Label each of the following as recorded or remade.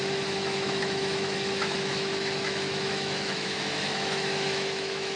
remade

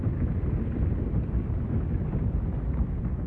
recorded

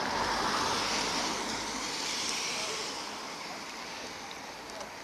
recorded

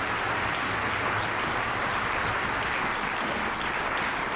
recorded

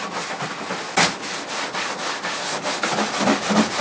recorded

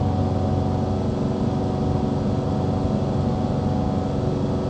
recorded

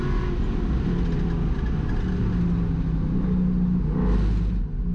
recorded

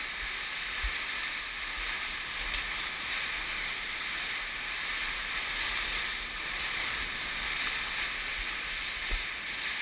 recorded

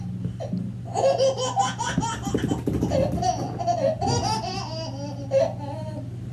recorded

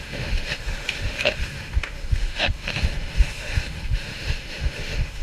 remade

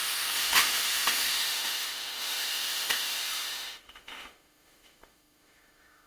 remade